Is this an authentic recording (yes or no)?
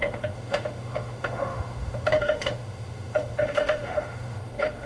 no